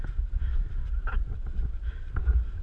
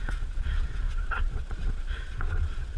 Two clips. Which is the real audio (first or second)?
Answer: first